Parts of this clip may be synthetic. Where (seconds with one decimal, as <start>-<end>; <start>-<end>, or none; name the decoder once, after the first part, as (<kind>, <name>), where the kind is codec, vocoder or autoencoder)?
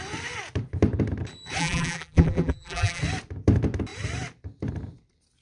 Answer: 1.6-3.0 (vocoder, BigVGAN v2)